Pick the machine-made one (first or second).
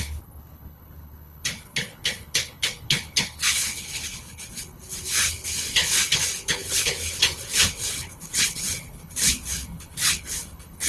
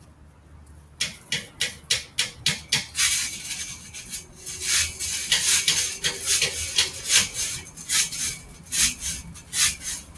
first